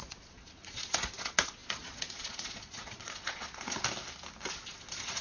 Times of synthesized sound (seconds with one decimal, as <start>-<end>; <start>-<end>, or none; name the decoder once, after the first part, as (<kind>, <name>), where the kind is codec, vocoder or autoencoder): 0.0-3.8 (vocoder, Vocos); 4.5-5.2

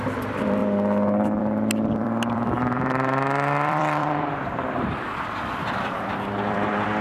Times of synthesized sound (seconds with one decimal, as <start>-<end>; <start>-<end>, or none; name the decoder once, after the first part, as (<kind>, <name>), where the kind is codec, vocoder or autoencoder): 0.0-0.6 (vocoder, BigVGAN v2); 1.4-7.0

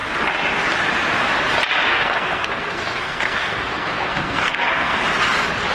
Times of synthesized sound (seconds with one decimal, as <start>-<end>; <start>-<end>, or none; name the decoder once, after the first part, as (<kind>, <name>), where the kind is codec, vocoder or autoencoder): 1.9-5.0 (codec, SNAC)

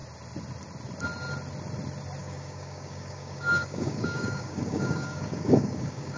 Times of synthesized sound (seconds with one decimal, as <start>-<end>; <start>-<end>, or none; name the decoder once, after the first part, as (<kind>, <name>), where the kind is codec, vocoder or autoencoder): 2.2-6.2 (codec, DAC)